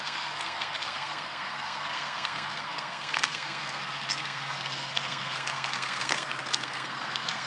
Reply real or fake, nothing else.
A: fake